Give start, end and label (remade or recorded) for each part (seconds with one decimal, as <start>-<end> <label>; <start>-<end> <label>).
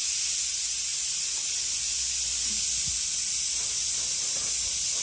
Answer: 0.0-5.0 recorded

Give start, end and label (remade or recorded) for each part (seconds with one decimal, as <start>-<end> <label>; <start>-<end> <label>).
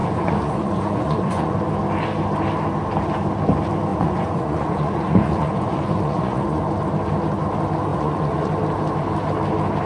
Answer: 0.0-1.6 remade; 1.6-3.9 recorded; 3.9-6.6 remade; 6.6-7.9 recorded; 7.9-8.5 remade; 8.5-9.9 recorded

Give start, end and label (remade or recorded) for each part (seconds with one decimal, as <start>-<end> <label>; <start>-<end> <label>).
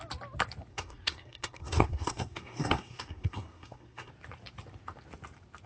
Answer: 0.0-0.7 recorded; 0.7-4.1 remade; 4.1-5.7 recorded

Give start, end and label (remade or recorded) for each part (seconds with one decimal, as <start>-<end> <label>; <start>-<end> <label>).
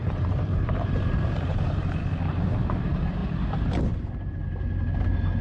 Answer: 0.0-2.0 remade; 2.0-3.2 recorded; 3.2-4.3 remade; 4.3-5.4 recorded